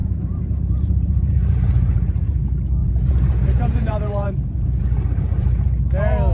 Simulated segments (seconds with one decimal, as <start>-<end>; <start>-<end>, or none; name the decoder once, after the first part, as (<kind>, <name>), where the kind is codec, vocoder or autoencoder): 0.0-2.4 (vocoder, Vocos); 2.8-4.8; 5.4-6.3